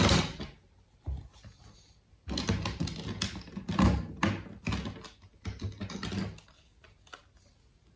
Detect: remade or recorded recorded